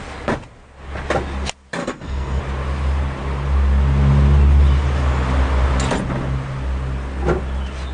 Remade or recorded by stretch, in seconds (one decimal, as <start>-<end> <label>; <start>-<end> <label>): 0.0-1.8 recorded; 1.8-2.4 remade; 2.4-7.9 recorded